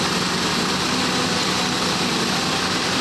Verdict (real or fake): real